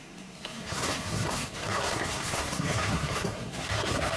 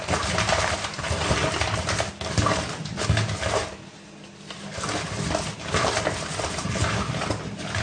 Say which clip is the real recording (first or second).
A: second